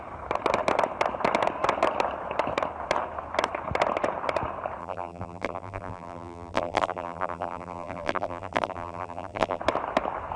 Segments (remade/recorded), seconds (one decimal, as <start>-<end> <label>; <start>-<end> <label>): 0.0-4.8 recorded; 4.8-9.6 remade; 9.6-10.4 recorded